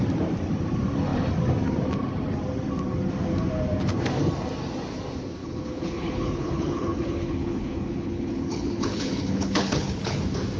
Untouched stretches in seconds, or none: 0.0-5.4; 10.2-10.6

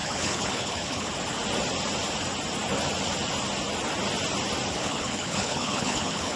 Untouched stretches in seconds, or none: 1.1-4.7